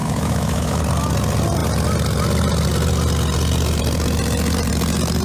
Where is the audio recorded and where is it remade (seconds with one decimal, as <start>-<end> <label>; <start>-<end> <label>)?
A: 0.0-0.8 remade; 0.8-5.2 recorded